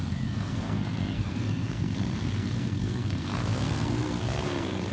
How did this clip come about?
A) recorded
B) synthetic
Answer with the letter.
B